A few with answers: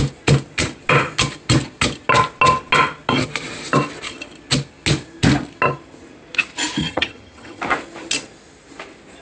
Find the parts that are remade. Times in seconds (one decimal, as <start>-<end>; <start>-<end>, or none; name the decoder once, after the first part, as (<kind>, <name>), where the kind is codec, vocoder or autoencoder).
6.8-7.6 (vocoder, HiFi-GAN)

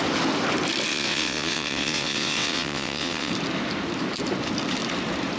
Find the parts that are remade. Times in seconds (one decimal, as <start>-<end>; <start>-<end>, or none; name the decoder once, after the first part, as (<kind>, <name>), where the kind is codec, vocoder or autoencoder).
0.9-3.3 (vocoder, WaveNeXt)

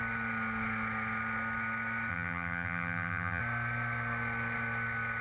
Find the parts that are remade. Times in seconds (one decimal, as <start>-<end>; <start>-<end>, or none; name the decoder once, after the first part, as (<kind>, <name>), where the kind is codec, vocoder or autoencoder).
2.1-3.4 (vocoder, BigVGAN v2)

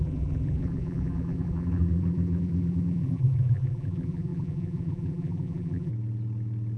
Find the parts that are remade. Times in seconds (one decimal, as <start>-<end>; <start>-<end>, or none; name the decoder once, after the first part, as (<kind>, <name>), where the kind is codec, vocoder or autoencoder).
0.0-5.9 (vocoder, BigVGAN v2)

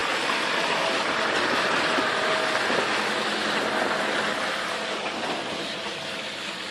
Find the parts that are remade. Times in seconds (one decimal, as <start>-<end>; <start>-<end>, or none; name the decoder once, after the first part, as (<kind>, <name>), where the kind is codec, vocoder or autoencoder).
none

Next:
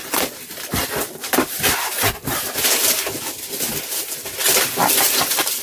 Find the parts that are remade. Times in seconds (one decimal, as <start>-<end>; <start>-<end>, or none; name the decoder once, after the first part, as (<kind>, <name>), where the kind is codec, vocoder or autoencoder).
0.0-2.2 (vocoder, BigVGAN v2); 4.3-5.6

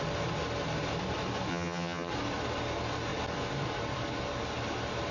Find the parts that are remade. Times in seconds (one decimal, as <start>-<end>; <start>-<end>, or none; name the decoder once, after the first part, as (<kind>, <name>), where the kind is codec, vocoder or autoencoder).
1.5-2.1 (vocoder, HiFi-GAN)

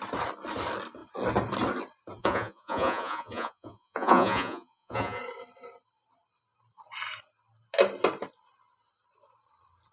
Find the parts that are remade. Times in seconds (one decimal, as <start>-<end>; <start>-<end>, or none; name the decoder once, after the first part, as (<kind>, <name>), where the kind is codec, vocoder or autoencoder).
2.2-5.2 (vocoder, Vocos)